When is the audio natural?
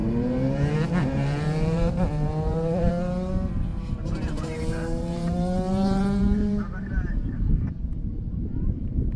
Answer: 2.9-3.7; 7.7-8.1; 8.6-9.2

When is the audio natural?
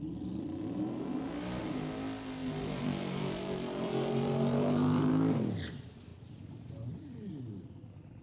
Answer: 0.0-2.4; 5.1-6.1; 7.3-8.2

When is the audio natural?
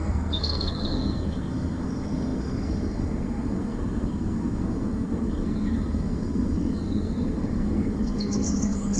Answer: none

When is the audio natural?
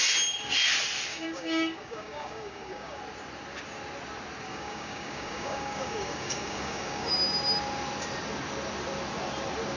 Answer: 0.0-1.1; 3.0-4.5; 7.1-9.8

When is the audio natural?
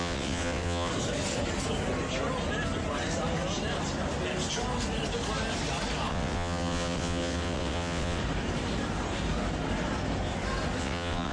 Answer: 0.9-6.1; 8.2-10.8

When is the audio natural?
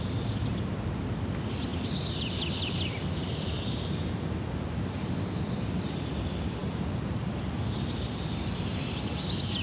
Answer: 0.0-9.6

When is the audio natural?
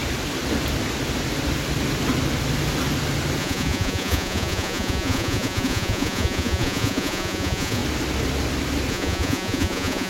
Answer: 0.0-3.4; 7.8-8.9